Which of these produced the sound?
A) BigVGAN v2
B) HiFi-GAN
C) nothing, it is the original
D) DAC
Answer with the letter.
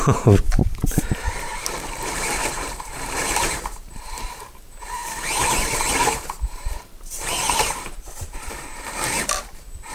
A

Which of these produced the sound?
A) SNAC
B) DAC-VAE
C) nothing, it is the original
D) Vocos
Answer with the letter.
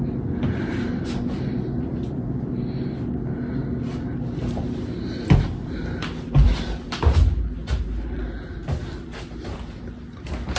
C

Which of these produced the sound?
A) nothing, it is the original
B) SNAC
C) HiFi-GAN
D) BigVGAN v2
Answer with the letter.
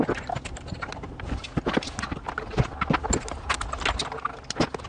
A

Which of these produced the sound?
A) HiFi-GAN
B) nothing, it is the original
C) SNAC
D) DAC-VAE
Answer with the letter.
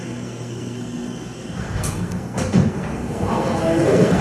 C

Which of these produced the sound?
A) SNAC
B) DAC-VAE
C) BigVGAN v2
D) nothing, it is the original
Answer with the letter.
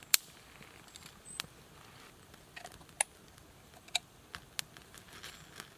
D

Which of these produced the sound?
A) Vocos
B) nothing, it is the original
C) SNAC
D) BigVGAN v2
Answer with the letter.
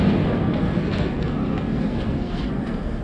C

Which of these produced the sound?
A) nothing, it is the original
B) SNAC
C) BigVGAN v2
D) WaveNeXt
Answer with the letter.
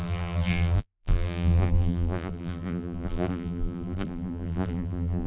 C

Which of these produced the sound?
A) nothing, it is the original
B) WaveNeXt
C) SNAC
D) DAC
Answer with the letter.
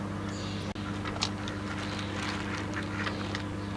A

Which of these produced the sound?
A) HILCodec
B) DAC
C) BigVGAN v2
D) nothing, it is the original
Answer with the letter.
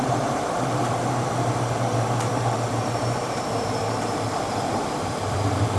C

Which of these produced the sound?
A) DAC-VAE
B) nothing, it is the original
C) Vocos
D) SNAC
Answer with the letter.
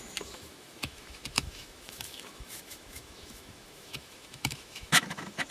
A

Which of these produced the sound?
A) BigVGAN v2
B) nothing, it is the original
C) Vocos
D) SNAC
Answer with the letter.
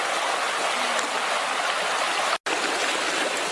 B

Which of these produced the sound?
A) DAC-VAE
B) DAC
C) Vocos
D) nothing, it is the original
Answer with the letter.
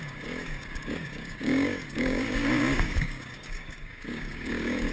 B